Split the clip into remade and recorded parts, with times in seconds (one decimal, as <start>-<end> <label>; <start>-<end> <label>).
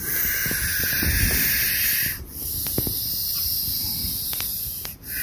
0.0-0.7 recorded; 0.7-3.8 remade; 3.8-5.2 recorded